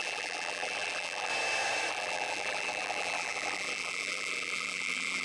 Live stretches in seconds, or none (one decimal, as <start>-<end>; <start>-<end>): 1.3-1.9